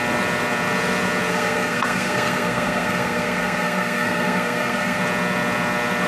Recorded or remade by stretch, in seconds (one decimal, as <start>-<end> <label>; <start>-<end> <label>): 0.0-1.3 recorded; 1.3-5.0 remade; 5.0-6.1 recorded